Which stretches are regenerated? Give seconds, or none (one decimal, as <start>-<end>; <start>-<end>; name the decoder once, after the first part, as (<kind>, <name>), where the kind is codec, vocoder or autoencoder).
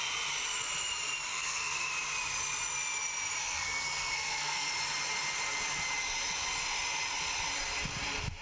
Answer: 1.3-1.9 (codec, SNAC); 3.4-4.7